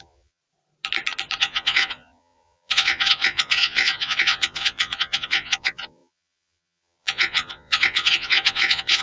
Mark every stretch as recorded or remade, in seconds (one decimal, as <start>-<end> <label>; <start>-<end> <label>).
0.0-0.4 remade; 0.4-1.4 recorded; 1.4-9.0 remade